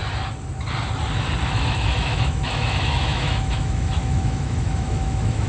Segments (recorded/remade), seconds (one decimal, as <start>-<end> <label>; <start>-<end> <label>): 0.0-1.4 recorded; 1.4-5.5 remade